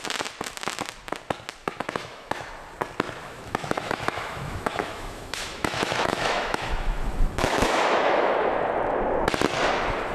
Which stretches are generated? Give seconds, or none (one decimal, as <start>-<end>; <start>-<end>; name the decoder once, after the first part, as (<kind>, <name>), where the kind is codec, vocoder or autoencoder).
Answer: 1.6-2.5 (autoencoder, DAC-VAE); 3.2-8.3